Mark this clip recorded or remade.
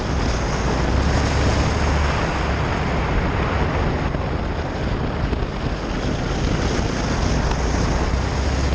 recorded